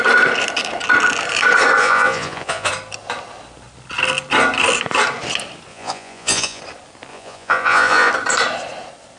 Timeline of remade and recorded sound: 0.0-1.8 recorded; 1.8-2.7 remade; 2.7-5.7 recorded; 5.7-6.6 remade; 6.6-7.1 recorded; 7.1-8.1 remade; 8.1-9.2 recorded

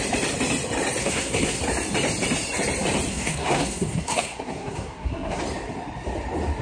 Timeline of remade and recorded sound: 0.0-1.0 recorded; 1.0-1.6 remade; 1.6-3.1 recorded; 3.1-5.4 remade; 5.4-6.6 recorded